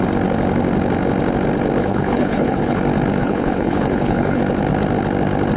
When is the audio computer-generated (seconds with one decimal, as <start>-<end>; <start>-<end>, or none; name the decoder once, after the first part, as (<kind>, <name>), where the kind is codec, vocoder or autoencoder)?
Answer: 1.8-2.8 (codec, HILCodec); 3.2-4.4